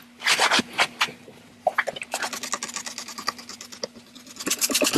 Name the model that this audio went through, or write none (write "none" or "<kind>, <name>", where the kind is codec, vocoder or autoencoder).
none